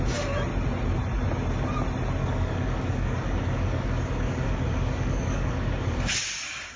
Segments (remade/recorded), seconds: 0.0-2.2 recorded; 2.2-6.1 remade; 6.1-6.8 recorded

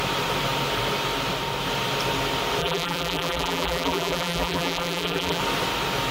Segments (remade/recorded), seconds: 0.0-2.6 recorded; 2.6-5.4 remade; 5.4-6.1 recorded